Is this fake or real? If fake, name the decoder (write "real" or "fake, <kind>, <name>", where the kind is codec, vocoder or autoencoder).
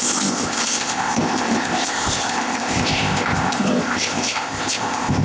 fake, codec, ZipCodec